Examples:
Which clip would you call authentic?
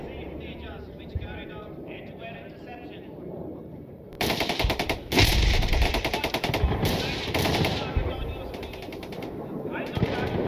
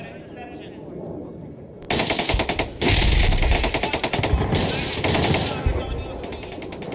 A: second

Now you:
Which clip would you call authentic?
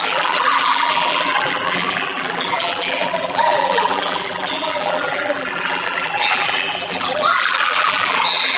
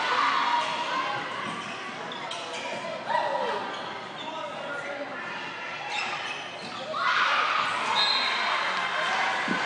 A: second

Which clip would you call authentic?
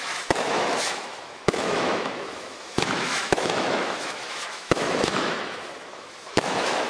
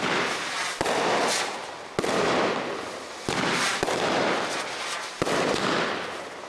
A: second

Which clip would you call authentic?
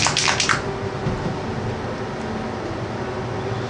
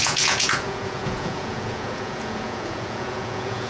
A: first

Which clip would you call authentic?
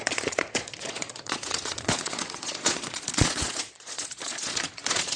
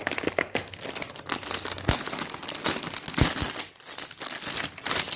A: second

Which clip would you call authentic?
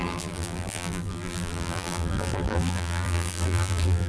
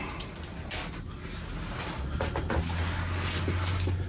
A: second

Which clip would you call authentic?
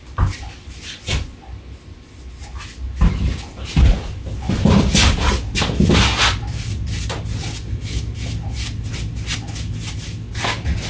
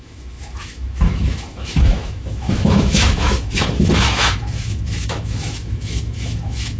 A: first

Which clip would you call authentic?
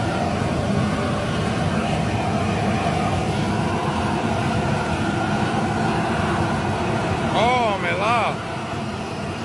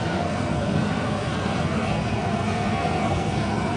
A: first